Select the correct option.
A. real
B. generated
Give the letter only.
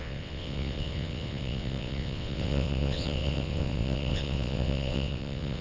B